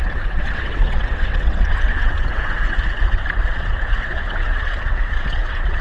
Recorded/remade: remade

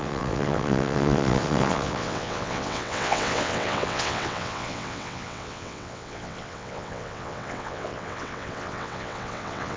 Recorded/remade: remade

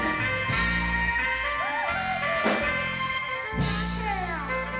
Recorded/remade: recorded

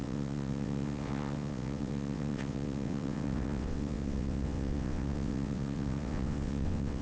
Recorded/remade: remade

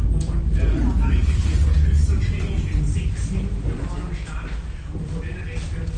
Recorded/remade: recorded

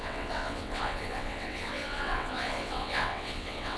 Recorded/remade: remade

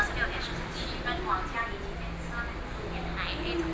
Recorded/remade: recorded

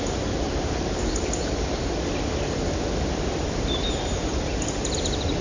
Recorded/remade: recorded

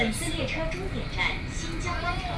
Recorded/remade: recorded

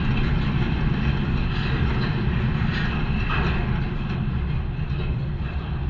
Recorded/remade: recorded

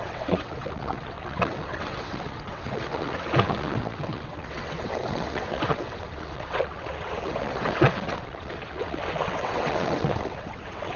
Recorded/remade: remade